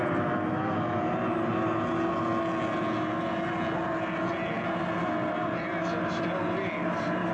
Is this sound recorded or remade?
recorded